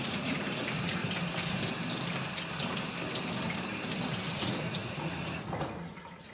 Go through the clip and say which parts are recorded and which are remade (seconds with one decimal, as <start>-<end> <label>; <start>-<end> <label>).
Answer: 0.0-1.0 remade; 1.0-4.3 recorded; 4.3-6.3 remade